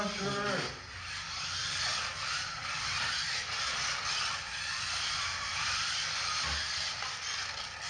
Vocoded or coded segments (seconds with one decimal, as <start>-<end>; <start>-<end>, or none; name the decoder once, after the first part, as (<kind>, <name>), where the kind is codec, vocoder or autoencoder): none